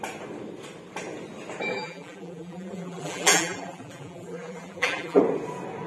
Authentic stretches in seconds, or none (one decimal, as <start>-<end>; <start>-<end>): 0.0-1.7; 5.2-5.9